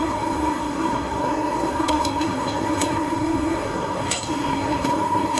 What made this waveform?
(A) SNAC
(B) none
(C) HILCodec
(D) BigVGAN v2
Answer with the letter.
A